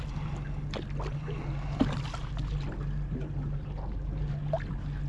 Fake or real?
real